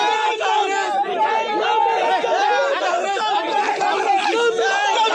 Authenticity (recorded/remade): recorded